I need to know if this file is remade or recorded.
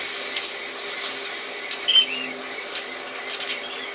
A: recorded